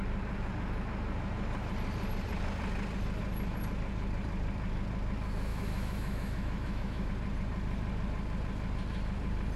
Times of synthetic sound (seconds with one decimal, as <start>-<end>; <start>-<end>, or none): 5.5-7.1